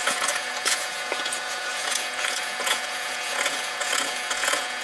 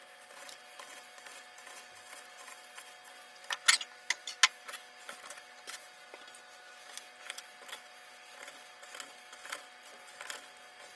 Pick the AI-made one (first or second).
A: first